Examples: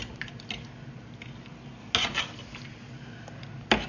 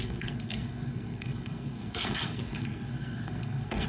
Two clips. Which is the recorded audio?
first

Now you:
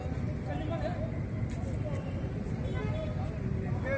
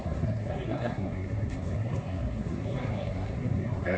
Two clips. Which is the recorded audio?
first